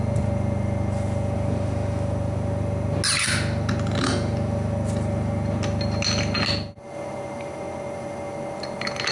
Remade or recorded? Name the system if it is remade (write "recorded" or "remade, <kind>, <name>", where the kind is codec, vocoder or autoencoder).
recorded